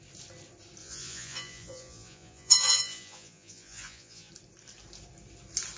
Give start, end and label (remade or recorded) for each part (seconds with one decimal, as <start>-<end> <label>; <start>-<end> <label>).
0.0-0.8 recorded; 0.8-4.3 remade; 4.3-5.8 recorded

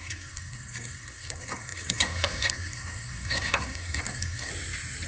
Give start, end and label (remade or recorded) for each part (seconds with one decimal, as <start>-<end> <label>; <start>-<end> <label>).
0.0-4.5 remade; 4.5-5.1 recorded

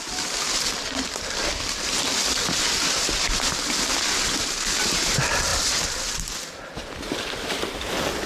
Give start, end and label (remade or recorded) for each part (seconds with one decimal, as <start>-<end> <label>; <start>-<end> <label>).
0.0-8.3 recorded

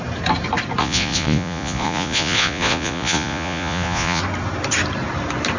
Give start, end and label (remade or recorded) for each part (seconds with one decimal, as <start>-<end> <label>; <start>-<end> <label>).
0.0-0.8 recorded; 0.8-4.2 remade; 4.2-5.6 recorded

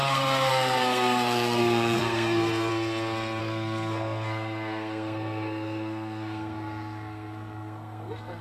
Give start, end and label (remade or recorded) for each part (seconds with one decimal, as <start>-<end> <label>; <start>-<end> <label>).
0.0-2.7 remade; 2.7-3.4 recorded; 3.4-8.4 remade